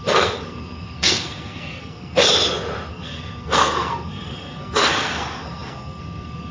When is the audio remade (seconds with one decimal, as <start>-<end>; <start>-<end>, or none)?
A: 0.0-2.2; 2.9-6.5